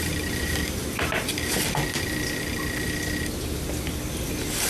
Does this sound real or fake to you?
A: real